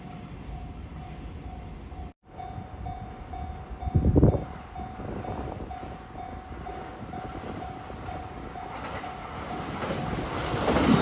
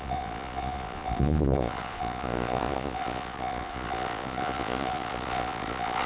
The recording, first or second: first